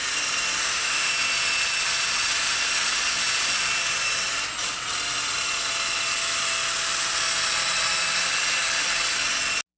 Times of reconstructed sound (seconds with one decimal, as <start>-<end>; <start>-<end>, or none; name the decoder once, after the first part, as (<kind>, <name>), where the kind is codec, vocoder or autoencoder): 0.6-1.1 (autoencoder, DAC-VAE)